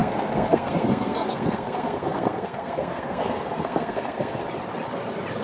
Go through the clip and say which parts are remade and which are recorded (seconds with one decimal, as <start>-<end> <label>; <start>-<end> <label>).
0.0-4.4 remade; 4.4-5.4 recorded